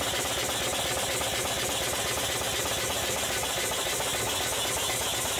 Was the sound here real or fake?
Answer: real